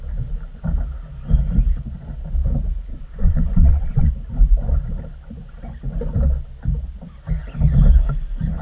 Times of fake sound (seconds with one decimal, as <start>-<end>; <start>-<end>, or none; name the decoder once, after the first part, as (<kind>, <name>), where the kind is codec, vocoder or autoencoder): 2.9-4.1 (vocoder, WaveNeXt)